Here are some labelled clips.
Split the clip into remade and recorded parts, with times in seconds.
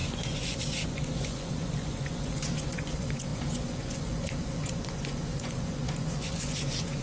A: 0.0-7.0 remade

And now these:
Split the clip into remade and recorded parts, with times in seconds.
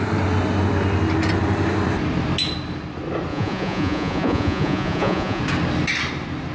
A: 0.0-3.3 recorded; 3.3-5.4 remade; 5.4-6.5 recorded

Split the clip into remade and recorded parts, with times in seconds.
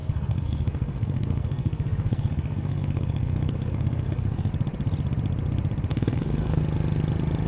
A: 0.0-4.5 remade; 4.5-5.9 recorded; 5.9-6.6 remade; 6.6-7.5 recorded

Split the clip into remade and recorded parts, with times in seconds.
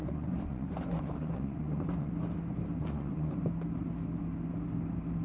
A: 0.0-2.1 remade; 2.1-2.8 recorded; 2.8-3.3 remade; 3.3-5.2 recorded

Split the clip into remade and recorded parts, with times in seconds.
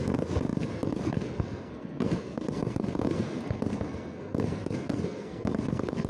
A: 0.0-6.1 remade